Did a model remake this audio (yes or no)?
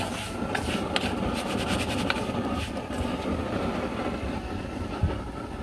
no